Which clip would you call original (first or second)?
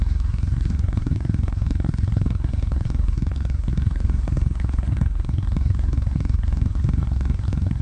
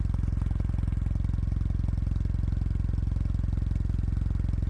second